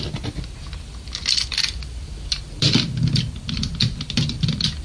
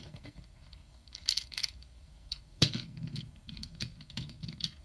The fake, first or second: second